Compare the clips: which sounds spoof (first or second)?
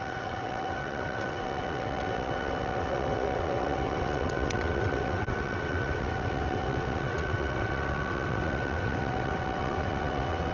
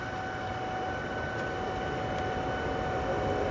first